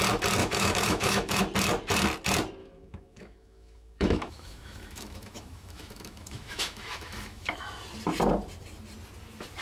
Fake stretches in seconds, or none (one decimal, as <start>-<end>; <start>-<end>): 0.4-1.4; 2.6-7.7